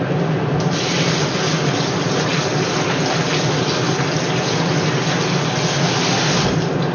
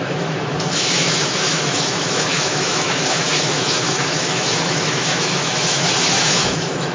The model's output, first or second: second